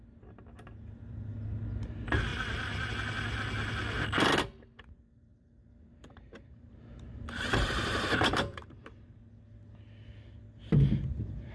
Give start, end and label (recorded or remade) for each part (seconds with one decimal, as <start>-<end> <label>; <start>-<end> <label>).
0.0-2.3 recorded; 2.3-2.9 remade; 2.9-5.3 recorded; 5.3-9.2 remade; 9.2-11.5 recorded